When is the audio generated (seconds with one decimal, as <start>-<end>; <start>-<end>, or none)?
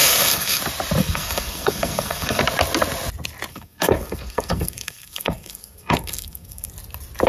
0.0-0.6; 1.0-2.4; 3.5-6.7